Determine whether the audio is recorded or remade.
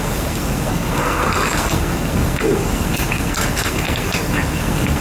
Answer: remade